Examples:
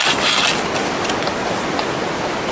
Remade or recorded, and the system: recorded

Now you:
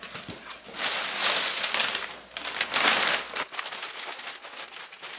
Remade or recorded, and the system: recorded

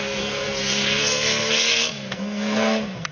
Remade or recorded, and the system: remade, codec, SNAC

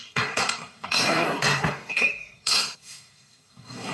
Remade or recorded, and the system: remade, codec, SNAC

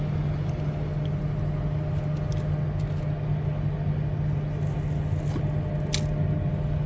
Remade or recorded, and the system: recorded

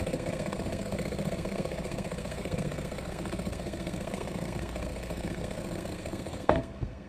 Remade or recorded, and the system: remade, codec, SNAC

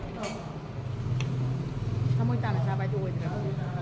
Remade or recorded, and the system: recorded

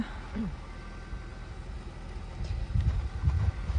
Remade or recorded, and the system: recorded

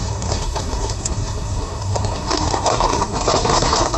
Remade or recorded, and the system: remade, codec, SNAC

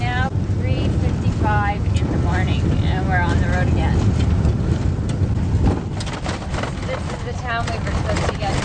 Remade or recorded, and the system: recorded